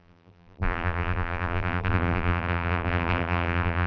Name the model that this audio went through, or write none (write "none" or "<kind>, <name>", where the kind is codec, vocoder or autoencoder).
vocoder, BigVGAN v2